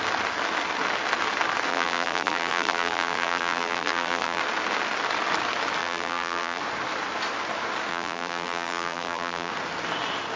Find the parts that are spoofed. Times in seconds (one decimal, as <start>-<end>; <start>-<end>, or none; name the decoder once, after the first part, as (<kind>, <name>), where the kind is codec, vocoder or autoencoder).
1.7-4.4 (vocoder, BigVGAN v2); 5.8-6.6; 7.9-9.5